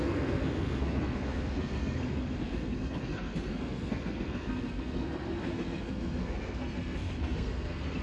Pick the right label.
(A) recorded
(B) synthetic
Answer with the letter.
B